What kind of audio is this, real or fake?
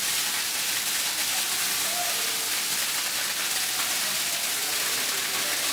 real